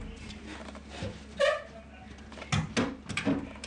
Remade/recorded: recorded